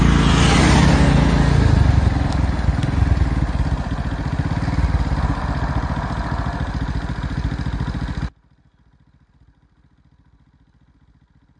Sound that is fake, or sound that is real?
real